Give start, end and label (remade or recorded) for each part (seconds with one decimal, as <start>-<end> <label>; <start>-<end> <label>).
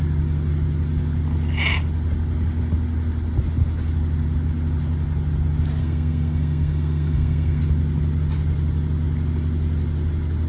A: 0.0-5.8 recorded; 5.8-7.6 remade; 7.6-10.5 recorded